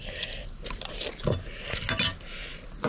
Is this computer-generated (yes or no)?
no